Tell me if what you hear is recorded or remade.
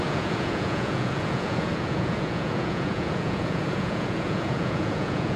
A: remade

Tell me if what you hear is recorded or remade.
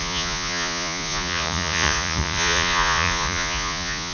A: remade